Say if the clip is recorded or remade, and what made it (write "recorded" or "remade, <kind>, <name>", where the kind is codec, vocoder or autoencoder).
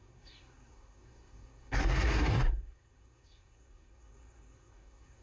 remade, codec, SNAC